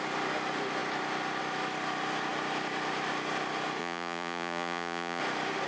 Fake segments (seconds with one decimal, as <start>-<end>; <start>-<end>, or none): 3.8-5.2